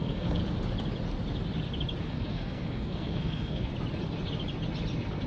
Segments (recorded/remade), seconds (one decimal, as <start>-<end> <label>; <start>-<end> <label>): 0.0-0.4 remade; 0.4-2.0 recorded; 2.0-3.7 remade; 3.7-5.3 recorded